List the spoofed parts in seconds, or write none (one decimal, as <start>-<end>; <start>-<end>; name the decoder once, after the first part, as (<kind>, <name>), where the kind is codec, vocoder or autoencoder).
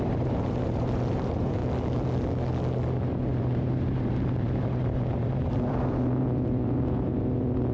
0.0-1.6 (vocoder, BigVGAN v2); 3.4-7.7